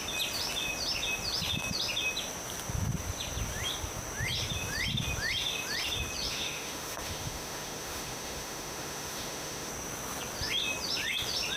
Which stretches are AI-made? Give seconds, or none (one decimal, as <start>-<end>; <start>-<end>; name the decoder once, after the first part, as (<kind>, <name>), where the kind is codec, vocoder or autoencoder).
6.3-9.7 (autoencoder, DAC-VAE)